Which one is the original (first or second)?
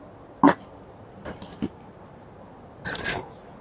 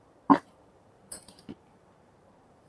first